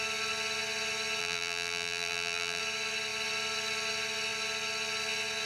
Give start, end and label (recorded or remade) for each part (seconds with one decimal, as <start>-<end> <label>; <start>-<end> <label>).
0.0-1.2 recorded; 1.2-2.6 remade; 2.6-5.5 recorded